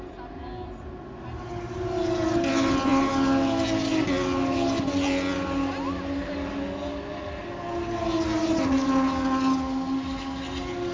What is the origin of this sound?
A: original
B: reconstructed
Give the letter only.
A